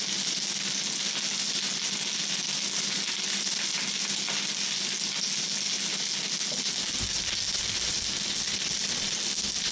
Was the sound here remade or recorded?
recorded